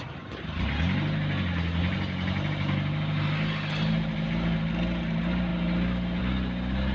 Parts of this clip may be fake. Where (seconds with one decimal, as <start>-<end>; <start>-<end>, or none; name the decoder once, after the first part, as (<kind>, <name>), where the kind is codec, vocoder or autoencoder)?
none